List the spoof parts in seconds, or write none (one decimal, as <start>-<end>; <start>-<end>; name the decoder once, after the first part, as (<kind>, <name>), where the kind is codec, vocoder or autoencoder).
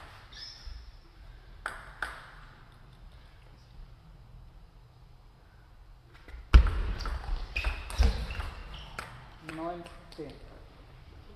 0.0-0.7 (vocoder, BigVGAN v2); 5.4-8.6; 9.3-11.4